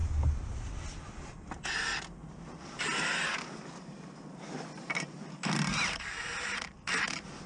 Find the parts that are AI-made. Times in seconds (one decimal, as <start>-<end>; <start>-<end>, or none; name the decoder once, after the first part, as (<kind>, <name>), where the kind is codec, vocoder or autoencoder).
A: none